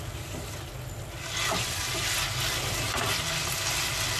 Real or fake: real